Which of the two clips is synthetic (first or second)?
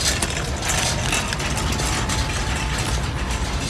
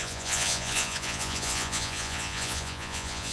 second